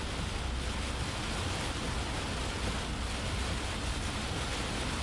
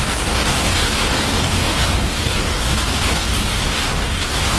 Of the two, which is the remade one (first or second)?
second